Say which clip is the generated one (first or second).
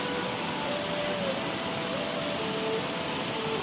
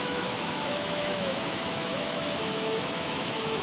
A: second